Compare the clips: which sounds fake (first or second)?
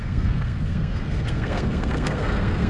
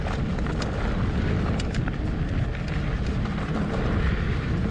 first